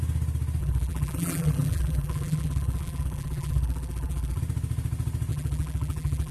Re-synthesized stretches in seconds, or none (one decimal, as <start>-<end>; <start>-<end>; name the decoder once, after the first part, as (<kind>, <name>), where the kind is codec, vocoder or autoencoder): 0.6-4.4 (vocoder, BigVGAN v2); 5.3-6.3